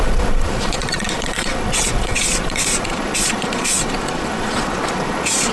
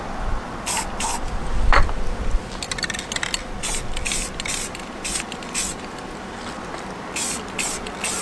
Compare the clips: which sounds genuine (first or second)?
second